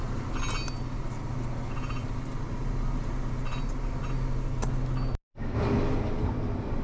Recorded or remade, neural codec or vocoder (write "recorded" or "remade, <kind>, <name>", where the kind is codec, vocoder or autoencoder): recorded